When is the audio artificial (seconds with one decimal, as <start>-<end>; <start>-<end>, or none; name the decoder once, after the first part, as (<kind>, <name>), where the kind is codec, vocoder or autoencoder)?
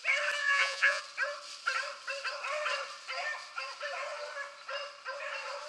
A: 0.4-1.0 (vocoder, Vocos)